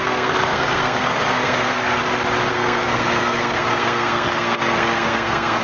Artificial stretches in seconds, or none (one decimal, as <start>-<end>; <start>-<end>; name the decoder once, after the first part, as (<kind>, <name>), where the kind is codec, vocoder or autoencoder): 0.0-2.0 (codec, SNAC); 2.5-5.6